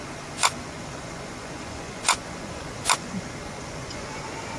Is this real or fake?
fake